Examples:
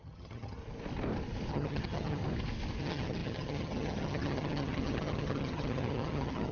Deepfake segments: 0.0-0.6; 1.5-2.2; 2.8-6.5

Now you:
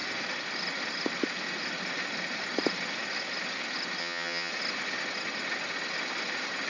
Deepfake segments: 4.0-4.5

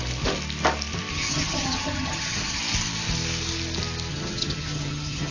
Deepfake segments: 1.1-2.6; 4.1-5.3

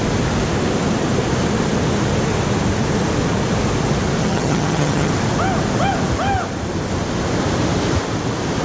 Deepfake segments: 4.2-5.1

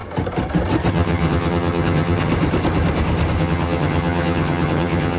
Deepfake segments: 0.9-2.3; 3.4-5.2

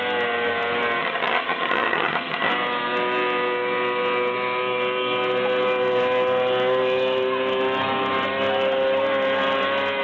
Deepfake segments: 1.0-2.5